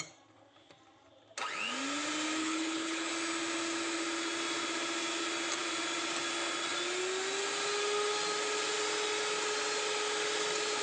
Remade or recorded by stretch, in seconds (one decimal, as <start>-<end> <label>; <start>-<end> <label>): 0.0-2.4 recorded; 2.4-3.1 remade; 3.1-10.8 recorded